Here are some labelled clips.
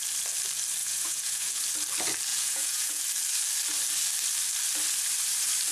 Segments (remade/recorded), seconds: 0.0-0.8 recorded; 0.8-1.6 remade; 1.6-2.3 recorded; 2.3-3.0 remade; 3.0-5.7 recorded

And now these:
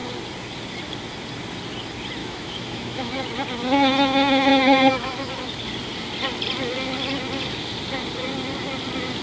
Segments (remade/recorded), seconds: 0.0-2.2 recorded; 2.2-3.1 remade; 3.1-4.5 recorded; 4.5-5.3 remade; 5.3-9.2 recorded

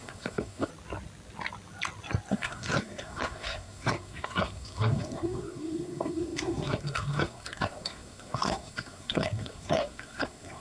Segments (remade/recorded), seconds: 0.0-0.7 remade; 0.7-2.3 recorded; 2.3-10.6 remade

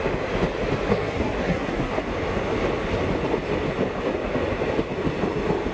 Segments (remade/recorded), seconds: 0.0-0.9 recorded; 0.9-1.9 remade; 1.9-5.7 recorded

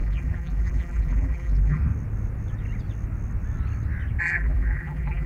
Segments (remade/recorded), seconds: 0.0-1.8 remade; 1.8-4.2 recorded; 4.2-5.3 remade

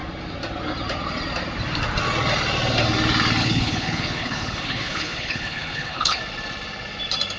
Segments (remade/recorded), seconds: 0.0-3.4 recorded; 3.4-6.2 remade; 6.2-7.4 recorded

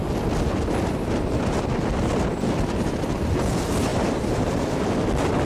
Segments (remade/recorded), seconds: 0.0-3.9 recorded; 3.9-4.9 remade; 4.9-5.5 recorded

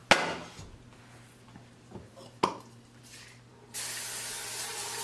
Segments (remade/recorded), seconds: 0.0-5.0 recorded